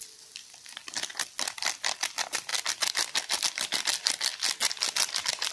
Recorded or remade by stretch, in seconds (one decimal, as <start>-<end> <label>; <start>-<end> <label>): 0.0-1.1 remade; 1.1-2.0 recorded; 2.0-4.3 remade; 4.3-5.1 recorded; 5.1-5.5 remade